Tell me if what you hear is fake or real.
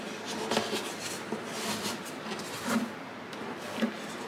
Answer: real